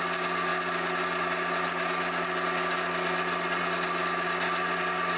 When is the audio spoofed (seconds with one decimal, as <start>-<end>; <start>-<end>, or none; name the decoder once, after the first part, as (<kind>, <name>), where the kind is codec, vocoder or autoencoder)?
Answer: none